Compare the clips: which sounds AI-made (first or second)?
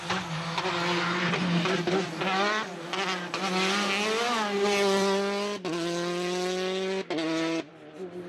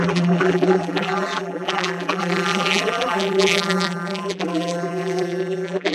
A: second